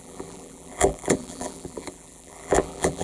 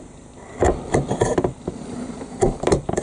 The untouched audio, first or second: second